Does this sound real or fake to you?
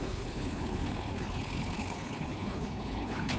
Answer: fake